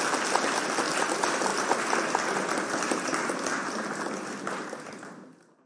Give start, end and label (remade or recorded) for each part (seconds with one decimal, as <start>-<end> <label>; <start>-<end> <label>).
0.0-5.7 recorded

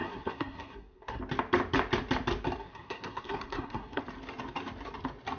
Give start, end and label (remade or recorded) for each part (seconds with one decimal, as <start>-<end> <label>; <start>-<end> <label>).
0.0-1.2 remade; 1.2-2.6 recorded; 2.6-4.0 remade; 4.0-5.4 recorded

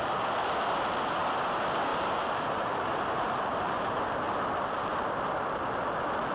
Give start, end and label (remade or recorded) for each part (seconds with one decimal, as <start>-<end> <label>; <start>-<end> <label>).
0.0-1.9 recorded; 1.9-4.1 remade; 4.1-6.3 recorded

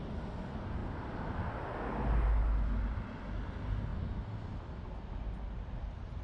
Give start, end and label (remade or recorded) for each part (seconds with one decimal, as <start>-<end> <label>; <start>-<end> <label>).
0.0-6.2 recorded

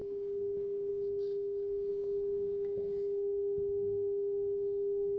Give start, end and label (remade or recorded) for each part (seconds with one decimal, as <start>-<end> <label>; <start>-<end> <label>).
0.0-5.2 remade

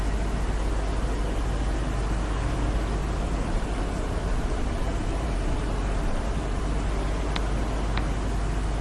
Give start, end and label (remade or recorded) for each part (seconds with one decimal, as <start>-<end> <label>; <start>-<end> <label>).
0.0-3.0 recorded; 3.0-6.6 remade; 6.6-8.8 recorded

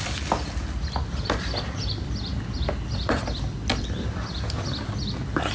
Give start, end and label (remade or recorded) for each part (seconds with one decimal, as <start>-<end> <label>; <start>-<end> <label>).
0.0-5.5 recorded